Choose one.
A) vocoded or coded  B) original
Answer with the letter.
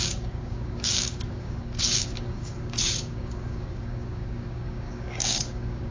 A